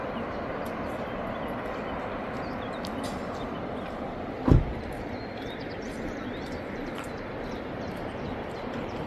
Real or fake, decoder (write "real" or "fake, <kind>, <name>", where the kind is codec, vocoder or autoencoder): real